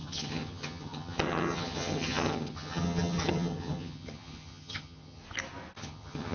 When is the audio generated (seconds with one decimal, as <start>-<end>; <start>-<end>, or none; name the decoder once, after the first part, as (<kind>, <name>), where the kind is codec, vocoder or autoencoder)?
0.0-5.2 (vocoder, HiFi-GAN); 5.8-6.3